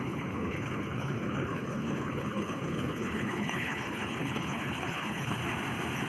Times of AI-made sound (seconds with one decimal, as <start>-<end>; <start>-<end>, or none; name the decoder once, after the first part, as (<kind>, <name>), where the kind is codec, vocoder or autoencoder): 0.0-5.4 (codec, HILCodec)